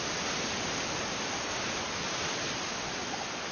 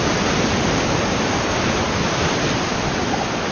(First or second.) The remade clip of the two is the second